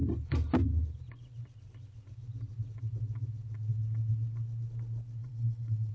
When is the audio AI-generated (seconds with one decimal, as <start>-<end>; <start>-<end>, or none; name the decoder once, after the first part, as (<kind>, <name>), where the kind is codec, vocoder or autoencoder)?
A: 5.2-5.9 (vocoder, WaveNeXt)